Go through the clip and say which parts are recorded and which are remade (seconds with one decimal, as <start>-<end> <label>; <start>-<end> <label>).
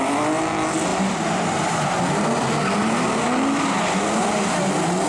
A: 0.0-5.1 recorded